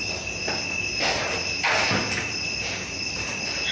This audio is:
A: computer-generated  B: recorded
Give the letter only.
B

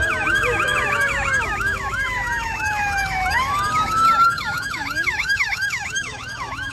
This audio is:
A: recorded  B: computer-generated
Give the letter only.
B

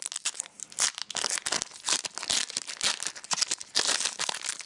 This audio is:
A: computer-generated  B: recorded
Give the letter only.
B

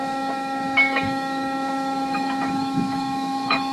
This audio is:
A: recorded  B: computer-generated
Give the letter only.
B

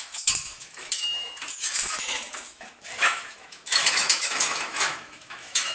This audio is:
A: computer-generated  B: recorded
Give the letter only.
A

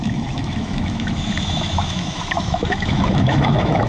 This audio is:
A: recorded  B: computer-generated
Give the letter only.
B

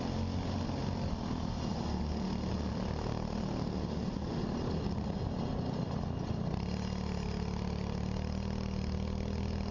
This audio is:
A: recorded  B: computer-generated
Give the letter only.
A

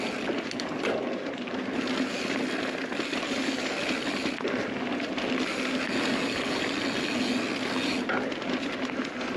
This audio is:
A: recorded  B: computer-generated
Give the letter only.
A